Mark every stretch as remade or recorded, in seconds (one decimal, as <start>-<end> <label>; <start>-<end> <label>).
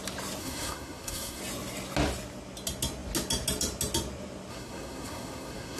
0.0-0.4 recorded; 0.4-1.4 remade; 1.4-4.5 recorded; 4.5-5.8 remade